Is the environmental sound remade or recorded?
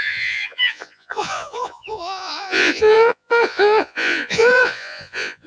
remade